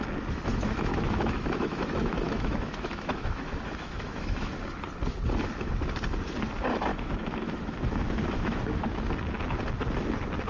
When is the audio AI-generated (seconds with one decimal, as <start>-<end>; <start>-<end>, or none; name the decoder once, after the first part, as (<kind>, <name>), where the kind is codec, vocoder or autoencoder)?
0.5-4.5 (autoencoder, DAC-VAE); 6.9-8.9

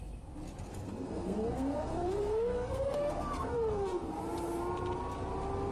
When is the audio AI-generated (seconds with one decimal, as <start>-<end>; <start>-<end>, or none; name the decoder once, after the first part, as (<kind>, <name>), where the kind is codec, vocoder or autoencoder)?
0.7-4.1 (codec, SNAC)

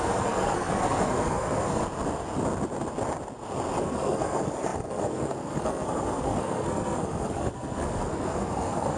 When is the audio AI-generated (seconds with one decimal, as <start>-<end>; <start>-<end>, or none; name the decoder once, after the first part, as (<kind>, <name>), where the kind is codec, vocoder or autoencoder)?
0.0-1.8 (codec, SNAC); 3.8-9.0

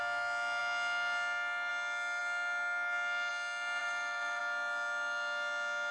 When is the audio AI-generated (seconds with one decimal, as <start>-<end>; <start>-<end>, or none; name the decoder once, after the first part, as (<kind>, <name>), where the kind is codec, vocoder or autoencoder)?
3.8-4.4 (vocoder, BigVGAN v2)

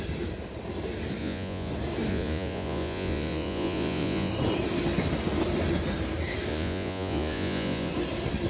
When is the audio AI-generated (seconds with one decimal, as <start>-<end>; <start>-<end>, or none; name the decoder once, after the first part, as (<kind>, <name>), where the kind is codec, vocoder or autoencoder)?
1.2-1.7 (vocoder, Vocos); 2.1-4.3; 6.5-7.9

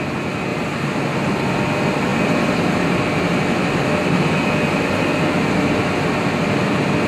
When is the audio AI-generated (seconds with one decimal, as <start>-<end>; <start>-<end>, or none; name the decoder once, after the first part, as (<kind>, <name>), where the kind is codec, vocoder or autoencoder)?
0.5-1.0 (vocoder, BigVGAN v2)

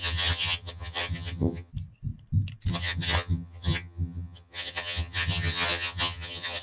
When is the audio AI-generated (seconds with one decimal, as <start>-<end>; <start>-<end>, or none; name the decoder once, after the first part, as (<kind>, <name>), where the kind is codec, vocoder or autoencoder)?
0.0-1.7 (vocoder, HiFi-GAN); 2.7-6.6